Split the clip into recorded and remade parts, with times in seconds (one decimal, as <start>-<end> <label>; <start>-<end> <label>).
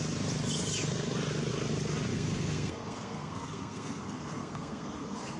0.0-2.1 recorded; 2.1-5.4 remade